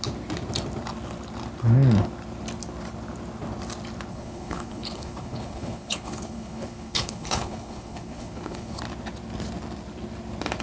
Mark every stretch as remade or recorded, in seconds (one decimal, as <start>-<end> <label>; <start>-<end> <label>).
0.0-4.1 recorded; 4.1-8.8 remade; 8.8-10.6 recorded